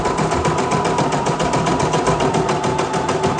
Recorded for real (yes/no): no